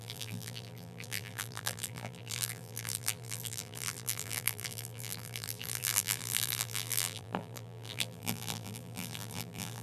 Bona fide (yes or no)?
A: no